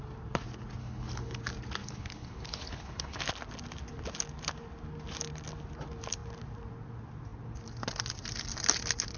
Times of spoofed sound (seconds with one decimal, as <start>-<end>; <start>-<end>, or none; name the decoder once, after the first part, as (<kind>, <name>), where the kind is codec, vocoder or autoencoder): 0.8-1.4 (codec, HILCodec); 1.8-3.2